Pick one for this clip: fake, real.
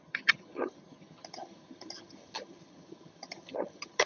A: fake